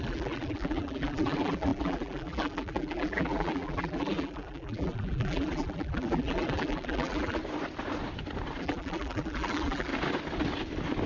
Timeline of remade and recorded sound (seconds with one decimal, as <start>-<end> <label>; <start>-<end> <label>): 0.0-7.4 remade; 7.4-8.6 recorded; 8.6-9.9 remade; 9.9-11.1 recorded